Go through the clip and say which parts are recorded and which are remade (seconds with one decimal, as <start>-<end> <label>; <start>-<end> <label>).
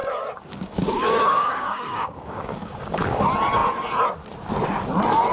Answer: 0.0-3.2 remade; 3.2-5.3 recorded